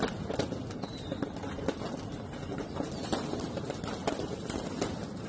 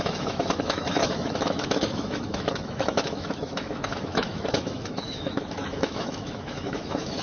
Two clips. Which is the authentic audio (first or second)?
first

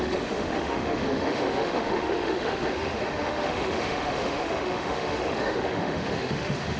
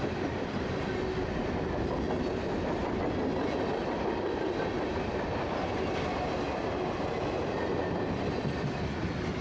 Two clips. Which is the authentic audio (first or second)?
second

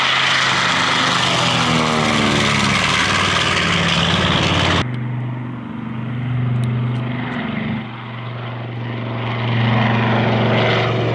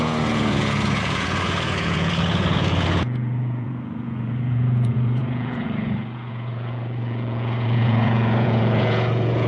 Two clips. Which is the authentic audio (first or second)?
first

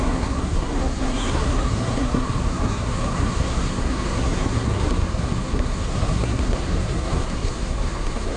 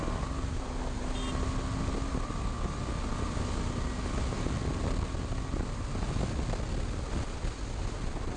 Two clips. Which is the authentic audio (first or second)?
second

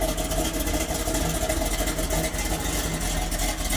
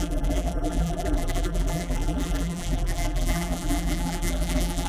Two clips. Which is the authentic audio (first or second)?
first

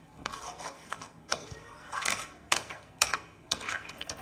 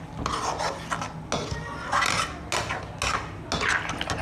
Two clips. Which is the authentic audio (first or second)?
second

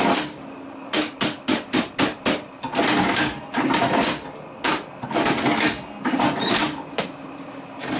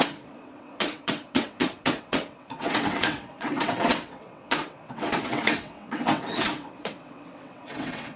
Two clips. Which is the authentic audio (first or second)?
first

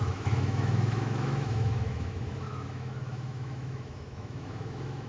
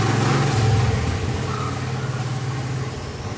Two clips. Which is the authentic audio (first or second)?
second